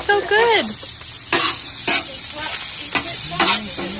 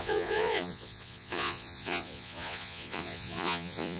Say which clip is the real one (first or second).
first